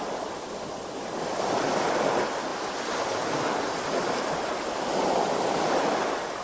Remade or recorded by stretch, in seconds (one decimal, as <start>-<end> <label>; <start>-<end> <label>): 0.0-6.4 recorded